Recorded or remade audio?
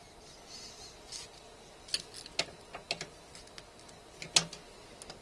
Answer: recorded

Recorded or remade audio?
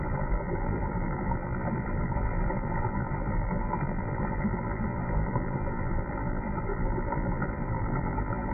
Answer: remade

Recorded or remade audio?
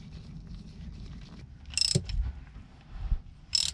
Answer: recorded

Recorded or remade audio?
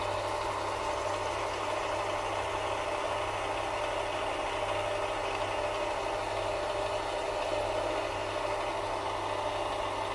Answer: recorded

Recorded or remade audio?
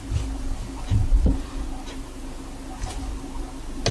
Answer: recorded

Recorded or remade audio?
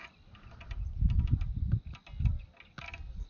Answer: recorded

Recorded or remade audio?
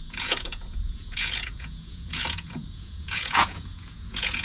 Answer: remade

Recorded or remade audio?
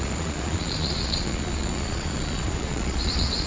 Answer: remade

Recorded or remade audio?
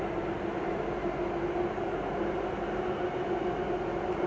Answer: recorded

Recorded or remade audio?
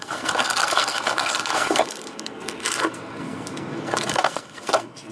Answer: remade